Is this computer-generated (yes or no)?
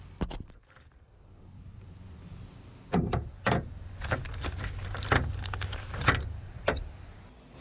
no